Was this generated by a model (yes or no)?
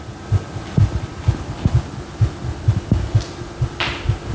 no